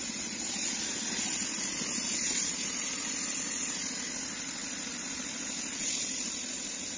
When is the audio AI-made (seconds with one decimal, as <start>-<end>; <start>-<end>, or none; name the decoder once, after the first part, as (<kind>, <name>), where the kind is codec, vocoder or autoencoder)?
none